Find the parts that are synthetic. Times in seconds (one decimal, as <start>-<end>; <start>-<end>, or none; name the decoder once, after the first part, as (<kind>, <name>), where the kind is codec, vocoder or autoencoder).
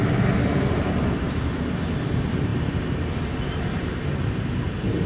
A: none